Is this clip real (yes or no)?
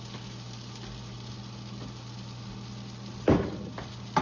yes